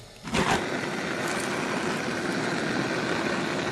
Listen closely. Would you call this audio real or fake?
real